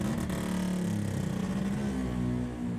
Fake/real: real